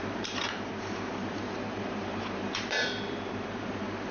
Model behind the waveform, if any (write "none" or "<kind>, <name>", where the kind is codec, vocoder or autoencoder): vocoder, BigVGAN v2